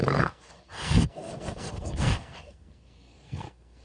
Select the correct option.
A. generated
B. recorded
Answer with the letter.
A